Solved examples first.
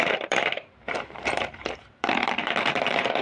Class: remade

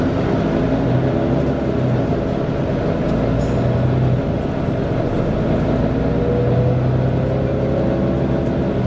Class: recorded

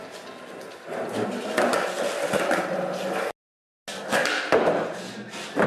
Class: recorded